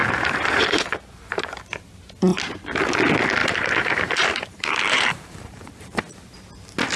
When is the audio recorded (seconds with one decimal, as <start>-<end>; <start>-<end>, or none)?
1.6-3.4; 6.0-7.0